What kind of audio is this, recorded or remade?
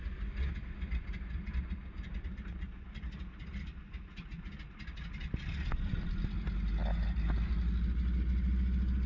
recorded